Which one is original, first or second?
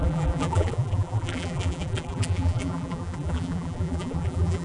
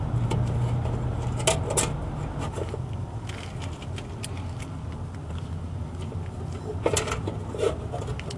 second